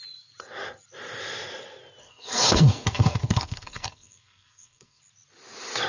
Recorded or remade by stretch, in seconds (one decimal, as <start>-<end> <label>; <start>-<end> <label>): 0.0-2.0 recorded; 2.0-5.0 remade; 5.0-5.9 recorded